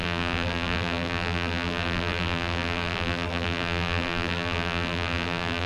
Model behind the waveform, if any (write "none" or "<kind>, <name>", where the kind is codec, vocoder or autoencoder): vocoder, BigVGAN v2